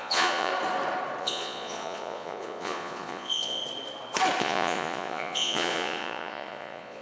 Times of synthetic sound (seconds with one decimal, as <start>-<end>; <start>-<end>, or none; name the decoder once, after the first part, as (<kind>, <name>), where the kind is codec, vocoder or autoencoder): 0.0-0.5 (vocoder, Vocos); 1.2-3.6; 4.4-7.0